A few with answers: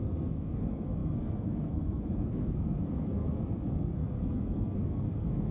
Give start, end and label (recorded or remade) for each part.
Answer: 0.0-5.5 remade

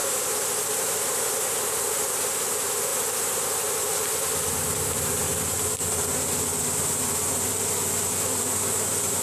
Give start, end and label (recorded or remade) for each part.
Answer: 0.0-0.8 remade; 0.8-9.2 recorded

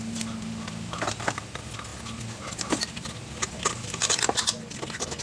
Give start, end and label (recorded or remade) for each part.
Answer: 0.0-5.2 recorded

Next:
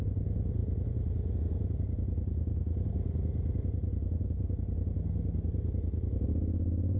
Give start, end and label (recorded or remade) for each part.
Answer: 0.0-7.0 recorded